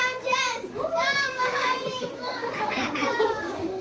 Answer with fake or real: fake